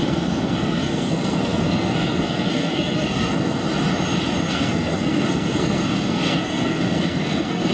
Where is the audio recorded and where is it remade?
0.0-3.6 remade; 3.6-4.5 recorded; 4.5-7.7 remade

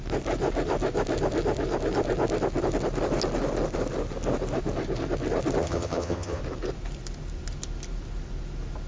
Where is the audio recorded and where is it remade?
0.0-5.6 recorded; 5.6-6.4 remade; 6.4-8.9 recorded

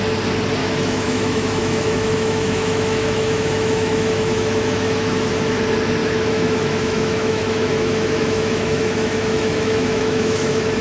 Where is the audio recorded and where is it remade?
0.0-0.6 recorded; 0.6-5.6 remade; 5.6-6.0 recorded; 6.0-10.8 remade

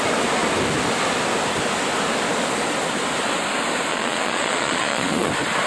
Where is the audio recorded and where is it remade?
0.0-3.9 recorded; 3.9-5.3 remade; 5.3-5.7 recorded